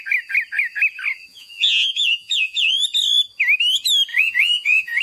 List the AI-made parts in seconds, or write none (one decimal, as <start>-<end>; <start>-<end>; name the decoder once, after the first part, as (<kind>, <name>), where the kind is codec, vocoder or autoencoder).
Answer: 1.3-2.7 (vocoder, Vocos); 4.1-5.0